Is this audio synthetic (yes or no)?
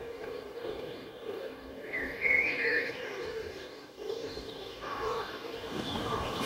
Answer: yes